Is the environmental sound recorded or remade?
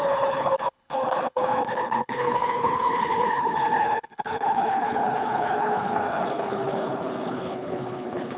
remade